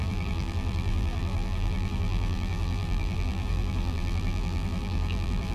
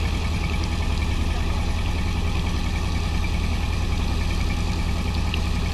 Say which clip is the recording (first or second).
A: second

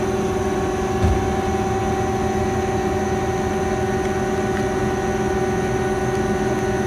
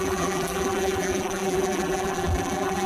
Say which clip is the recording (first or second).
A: first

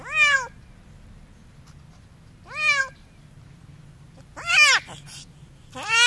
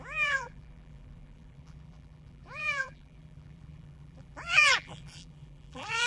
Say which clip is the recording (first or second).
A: first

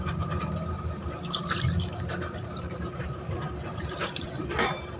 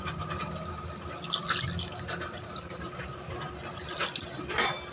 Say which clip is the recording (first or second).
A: second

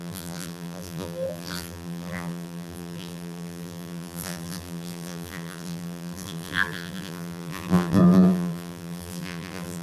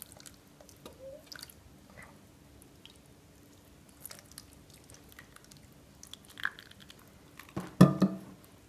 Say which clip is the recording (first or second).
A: second